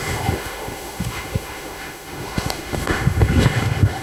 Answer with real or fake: fake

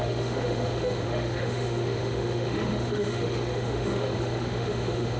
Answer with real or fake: fake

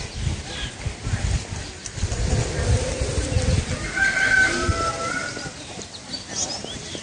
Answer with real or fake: real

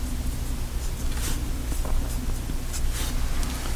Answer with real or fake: real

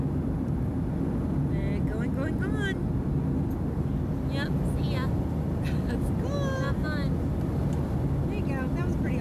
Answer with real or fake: real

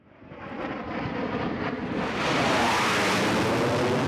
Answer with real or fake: real